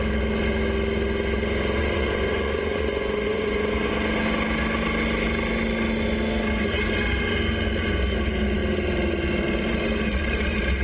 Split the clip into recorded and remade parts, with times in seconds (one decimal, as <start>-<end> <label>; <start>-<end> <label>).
0.0-1.8 recorded; 1.8-3.9 remade; 3.9-10.8 recorded